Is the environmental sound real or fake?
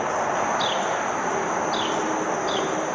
real